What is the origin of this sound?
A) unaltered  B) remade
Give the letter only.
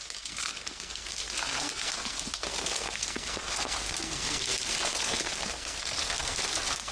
B